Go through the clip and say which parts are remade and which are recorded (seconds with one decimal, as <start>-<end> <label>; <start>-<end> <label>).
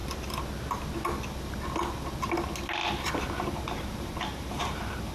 0.0-3.1 recorded; 3.1-5.1 remade